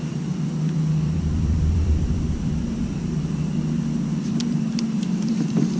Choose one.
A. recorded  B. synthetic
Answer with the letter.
B